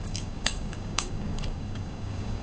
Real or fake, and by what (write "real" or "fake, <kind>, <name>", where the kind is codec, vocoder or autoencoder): fake, codec, DAC